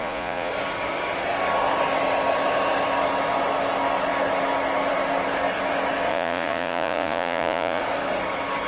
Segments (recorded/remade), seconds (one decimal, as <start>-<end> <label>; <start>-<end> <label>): 0.0-0.5 remade; 0.5-6.1 recorded; 6.1-7.8 remade; 7.8-8.7 recorded